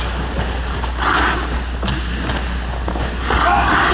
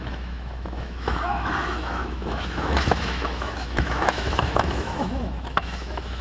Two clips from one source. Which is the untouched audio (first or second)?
first